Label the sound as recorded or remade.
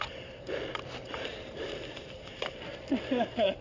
remade